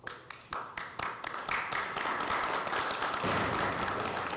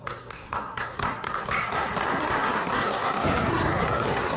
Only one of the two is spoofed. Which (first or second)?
second